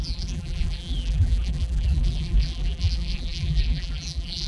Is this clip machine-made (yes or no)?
yes